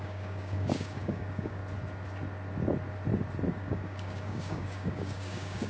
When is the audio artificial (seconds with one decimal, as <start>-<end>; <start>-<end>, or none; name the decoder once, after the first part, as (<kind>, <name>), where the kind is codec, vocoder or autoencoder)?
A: 0.0-1.6 (codec, DAC); 3.5-5.7